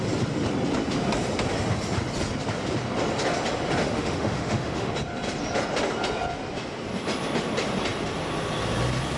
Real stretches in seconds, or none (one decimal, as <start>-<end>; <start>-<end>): 0.0-3.8; 4.9-9.2